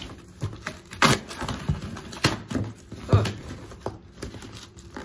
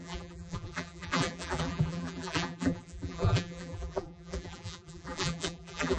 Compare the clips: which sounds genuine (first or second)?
first